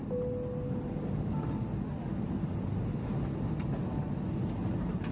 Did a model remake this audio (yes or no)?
no